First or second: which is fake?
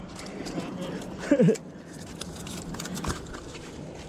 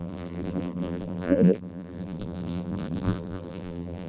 second